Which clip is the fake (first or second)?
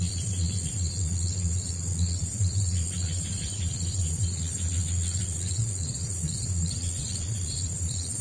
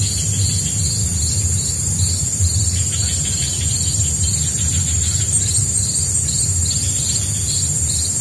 first